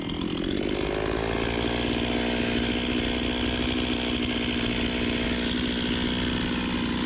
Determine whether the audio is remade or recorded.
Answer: recorded